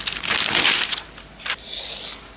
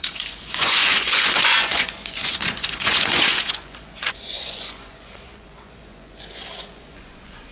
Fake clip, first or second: second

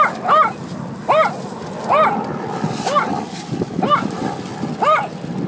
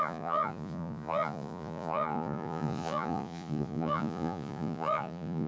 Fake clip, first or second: second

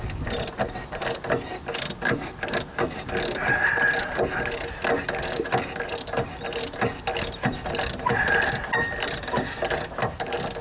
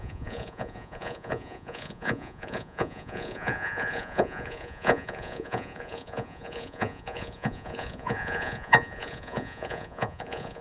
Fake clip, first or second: second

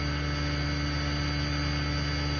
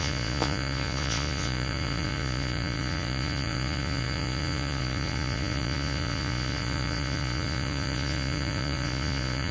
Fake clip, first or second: second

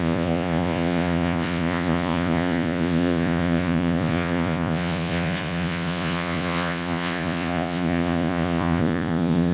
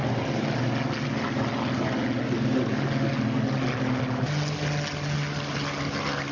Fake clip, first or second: first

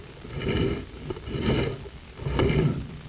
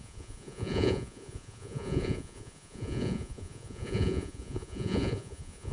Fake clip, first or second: second